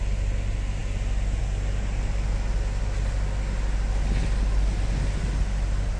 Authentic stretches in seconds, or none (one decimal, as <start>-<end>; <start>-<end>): 0.0-6.0